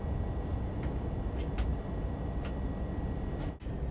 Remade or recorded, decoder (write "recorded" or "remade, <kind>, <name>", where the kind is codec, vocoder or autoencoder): recorded